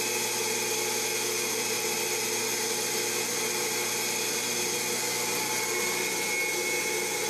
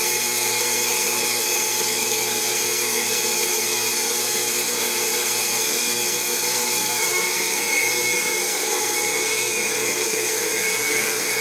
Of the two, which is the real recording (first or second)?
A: first